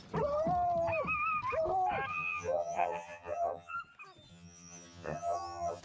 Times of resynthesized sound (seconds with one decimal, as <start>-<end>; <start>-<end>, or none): 2.1-3.8; 4.3-5.8